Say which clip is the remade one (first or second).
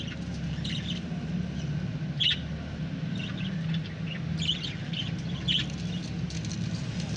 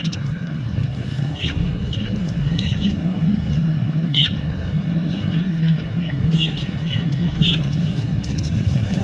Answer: second